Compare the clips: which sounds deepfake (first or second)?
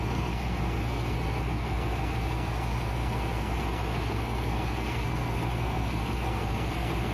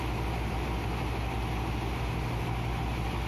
first